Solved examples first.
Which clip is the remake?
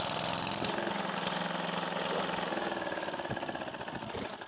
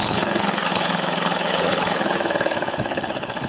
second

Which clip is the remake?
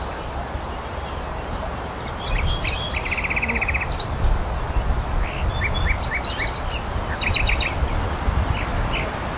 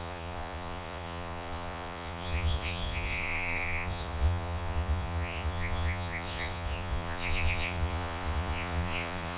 second